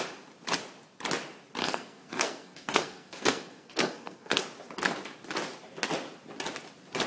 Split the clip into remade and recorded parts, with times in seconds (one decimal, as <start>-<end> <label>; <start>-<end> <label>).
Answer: 0.0-1.6 recorded; 1.6-4.4 remade; 4.4-7.1 recorded